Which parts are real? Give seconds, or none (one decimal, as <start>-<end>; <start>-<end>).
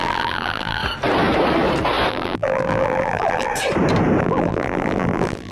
0.8-2.1; 3.5-4.2